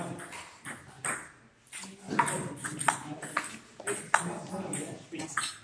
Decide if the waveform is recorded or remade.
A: recorded